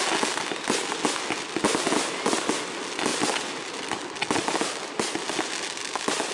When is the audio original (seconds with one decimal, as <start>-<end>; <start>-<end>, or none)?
0.0-6.3